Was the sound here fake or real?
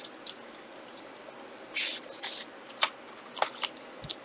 real